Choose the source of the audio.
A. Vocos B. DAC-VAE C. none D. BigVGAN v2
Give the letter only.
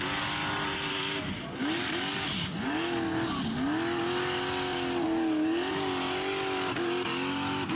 C